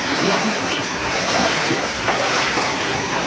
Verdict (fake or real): fake